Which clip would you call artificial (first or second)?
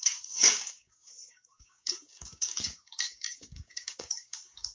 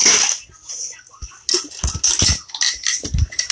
first